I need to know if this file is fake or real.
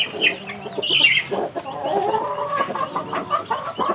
real